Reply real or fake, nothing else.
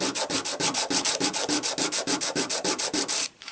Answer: real